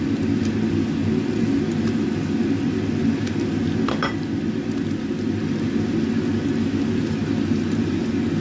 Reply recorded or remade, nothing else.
recorded